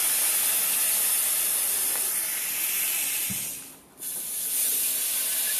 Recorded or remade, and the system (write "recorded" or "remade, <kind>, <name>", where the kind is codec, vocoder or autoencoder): recorded